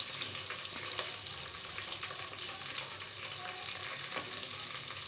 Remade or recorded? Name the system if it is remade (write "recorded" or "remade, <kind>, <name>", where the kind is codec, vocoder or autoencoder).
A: recorded